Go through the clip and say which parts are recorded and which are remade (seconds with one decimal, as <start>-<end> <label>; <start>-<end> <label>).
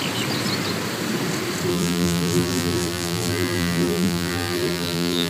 0.0-1.7 recorded; 1.7-5.3 remade